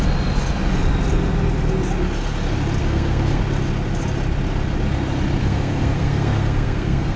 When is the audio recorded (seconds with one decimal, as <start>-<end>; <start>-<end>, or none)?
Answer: 0.0-2.8; 3.4-5.4